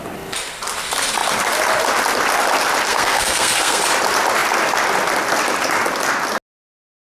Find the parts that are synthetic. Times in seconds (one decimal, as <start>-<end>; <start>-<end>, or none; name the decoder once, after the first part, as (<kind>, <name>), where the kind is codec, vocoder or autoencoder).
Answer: 2.9-3.8 (codec, SNAC)